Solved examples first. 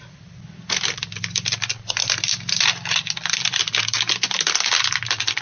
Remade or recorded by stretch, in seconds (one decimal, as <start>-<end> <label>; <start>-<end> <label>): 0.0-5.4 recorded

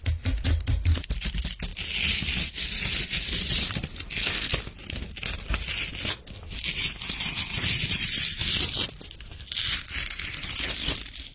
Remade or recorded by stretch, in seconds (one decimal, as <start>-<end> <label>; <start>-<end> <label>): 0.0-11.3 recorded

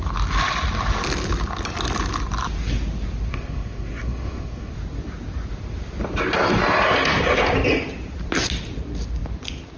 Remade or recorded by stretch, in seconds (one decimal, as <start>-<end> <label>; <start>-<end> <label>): 0.0-3.3 recorded; 3.3-4.7 remade; 4.7-9.8 recorded

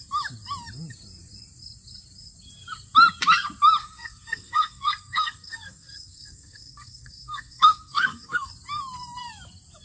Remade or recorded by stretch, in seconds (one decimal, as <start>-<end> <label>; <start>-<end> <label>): 0.0-3.8 recorded; 3.8-8.5 remade; 8.5-9.8 recorded

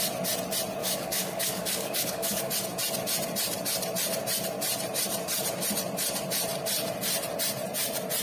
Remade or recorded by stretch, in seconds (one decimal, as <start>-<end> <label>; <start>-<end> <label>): 0.0-0.8 recorded; 0.8-2.5 remade; 2.5-8.2 recorded